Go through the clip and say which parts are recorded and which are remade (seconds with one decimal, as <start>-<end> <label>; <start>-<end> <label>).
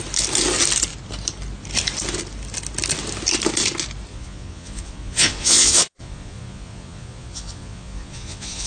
0.0-4.1 recorded; 4.1-8.7 remade